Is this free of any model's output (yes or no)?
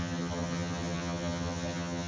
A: no